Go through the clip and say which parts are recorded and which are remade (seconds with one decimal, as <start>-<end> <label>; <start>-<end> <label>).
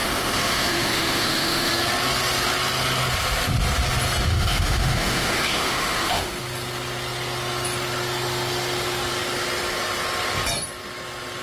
0.0-1.7 remade; 1.7-4.3 recorded; 4.3-6.4 remade; 6.4-11.4 recorded